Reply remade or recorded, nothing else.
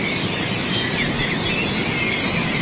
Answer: recorded